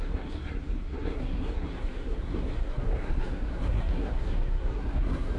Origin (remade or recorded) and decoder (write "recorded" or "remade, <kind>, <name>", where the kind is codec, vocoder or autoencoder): remade, codec, SNAC